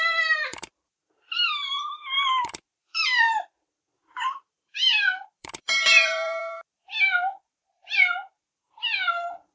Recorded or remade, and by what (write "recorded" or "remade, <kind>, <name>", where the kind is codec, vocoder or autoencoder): remade, vocoder, BigVGAN v2